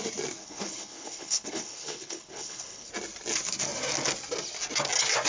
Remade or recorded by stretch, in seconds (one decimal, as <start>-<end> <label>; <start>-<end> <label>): 0.0-0.4 recorded; 0.4-2.9 remade; 2.9-5.3 recorded